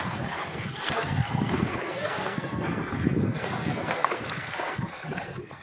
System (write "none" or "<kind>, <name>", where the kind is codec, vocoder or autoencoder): codec, SNAC